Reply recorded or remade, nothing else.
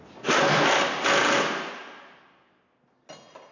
recorded